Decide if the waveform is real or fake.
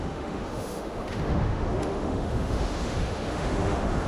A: fake